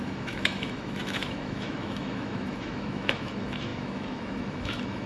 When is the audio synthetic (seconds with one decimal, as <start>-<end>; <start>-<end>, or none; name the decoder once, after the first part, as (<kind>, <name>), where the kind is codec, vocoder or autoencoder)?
0.0-5.1 (autoencoder, DAC-VAE)